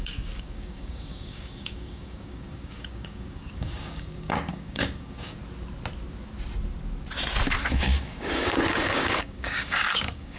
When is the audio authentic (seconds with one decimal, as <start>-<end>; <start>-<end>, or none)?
5.4-7.7